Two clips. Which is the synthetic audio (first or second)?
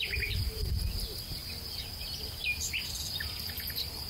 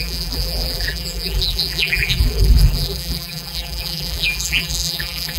second